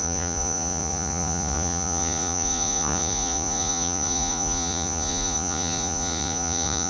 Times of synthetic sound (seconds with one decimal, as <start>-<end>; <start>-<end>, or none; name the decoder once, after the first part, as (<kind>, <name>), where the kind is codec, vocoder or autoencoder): 0.0-6.9 (vocoder, Vocos)